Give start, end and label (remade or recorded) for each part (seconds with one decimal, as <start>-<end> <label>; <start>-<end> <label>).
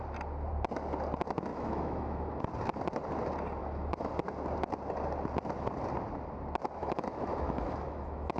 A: 0.0-1.5 recorded; 1.5-2.4 remade; 2.4-3.6 recorded; 3.6-4.1 remade; 4.1-6.8 recorded; 6.8-8.4 remade